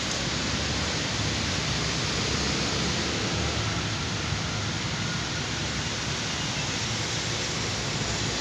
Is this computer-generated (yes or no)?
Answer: no